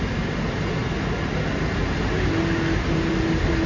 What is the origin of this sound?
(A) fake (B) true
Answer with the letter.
B